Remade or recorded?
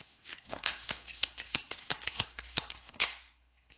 remade